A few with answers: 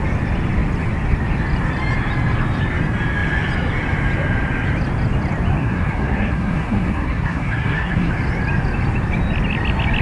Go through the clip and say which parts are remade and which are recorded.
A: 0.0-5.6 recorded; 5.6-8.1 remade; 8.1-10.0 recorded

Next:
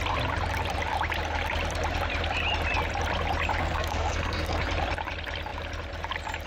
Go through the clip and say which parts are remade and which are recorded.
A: 0.0-3.6 recorded; 3.6-4.6 remade; 4.6-6.5 recorded

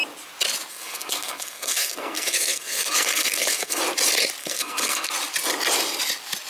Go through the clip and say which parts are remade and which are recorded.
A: 0.0-0.7 recorded; 0.7-3.8 remade; 3.8-4.4 recorded; 4.4-5.1 remade; 5.1-6.5 recorded